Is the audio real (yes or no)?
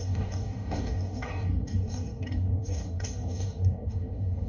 no